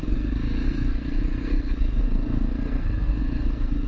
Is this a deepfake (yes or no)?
yes